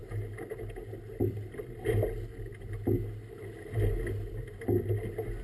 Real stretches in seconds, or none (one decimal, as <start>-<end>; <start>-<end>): 0.0-5.4